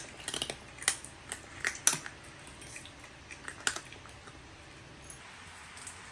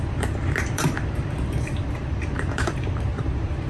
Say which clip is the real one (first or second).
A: first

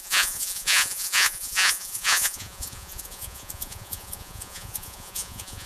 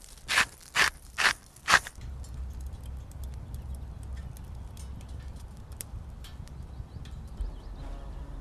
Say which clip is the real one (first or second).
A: second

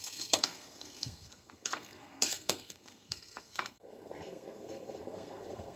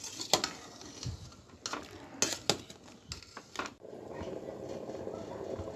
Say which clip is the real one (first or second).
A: second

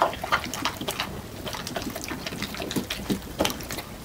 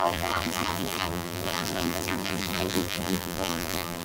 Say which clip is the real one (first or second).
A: first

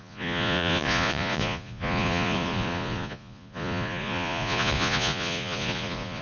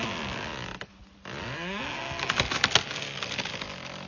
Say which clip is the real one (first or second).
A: second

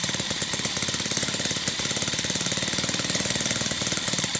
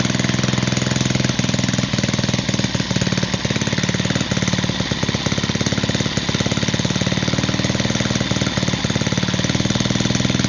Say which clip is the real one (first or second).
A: second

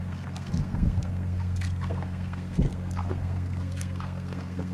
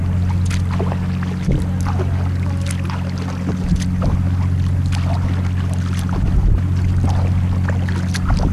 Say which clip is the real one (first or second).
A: second